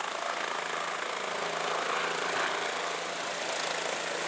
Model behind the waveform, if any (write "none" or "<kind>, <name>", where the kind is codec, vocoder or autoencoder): none